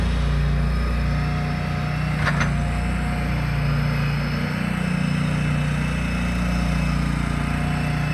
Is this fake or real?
real